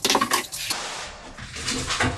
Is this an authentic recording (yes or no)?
yes